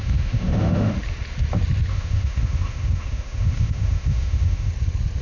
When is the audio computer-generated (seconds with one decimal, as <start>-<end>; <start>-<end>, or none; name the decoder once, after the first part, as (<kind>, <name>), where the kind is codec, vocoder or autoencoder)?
0.0-0.9 (autoencoder, DAC-VAE); 1.9-4.7